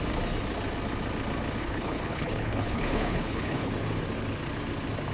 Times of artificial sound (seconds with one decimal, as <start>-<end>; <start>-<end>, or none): 1.6-3.7